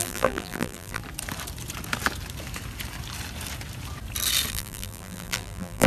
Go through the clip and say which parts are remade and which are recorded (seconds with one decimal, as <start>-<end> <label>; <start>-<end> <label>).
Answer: 0.0-1.0 remade; 1.0-4.5 recorded; 4.5-5.9 remade